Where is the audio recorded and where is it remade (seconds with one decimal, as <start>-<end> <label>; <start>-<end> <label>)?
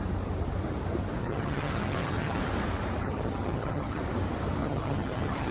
0.0-1.2 recorded; 1.2-2.4 remade; 2.4-3.0 recorded; 3.0-4.0 remade; 4.0-4.6 recorded; 4.6-5.5 remade